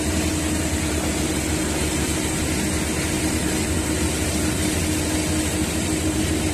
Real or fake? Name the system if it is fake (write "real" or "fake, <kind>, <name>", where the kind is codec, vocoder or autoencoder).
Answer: real